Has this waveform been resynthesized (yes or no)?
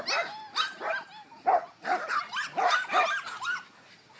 no